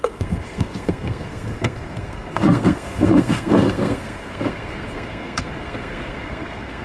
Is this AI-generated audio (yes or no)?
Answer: yes